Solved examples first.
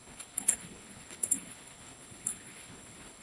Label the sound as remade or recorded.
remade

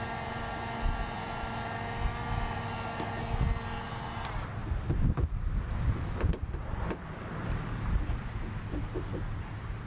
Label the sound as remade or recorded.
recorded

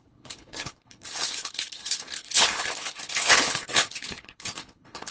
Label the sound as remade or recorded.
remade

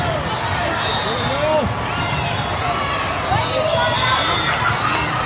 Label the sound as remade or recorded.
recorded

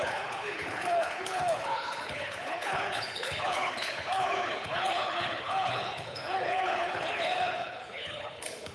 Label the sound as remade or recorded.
remade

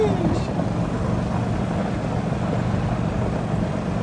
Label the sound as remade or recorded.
recorded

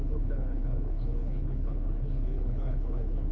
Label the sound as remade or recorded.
remade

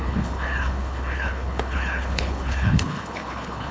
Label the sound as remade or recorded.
remade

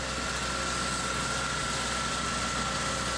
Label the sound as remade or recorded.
recorded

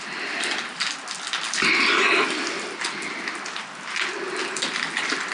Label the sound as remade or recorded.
recorded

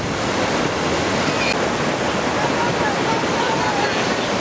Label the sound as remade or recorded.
recorded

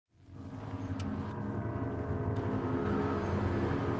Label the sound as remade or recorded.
recorded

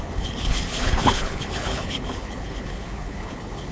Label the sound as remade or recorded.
remade